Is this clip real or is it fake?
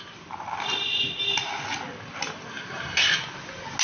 real